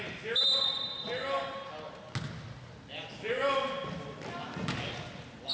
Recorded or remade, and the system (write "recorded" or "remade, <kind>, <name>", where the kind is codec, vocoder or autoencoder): recorded